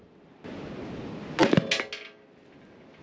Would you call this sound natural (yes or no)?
yes